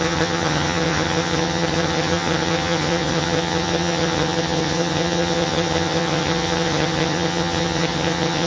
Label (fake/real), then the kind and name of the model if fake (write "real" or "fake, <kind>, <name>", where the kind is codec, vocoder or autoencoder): fake, vocoder, HiFi-GAN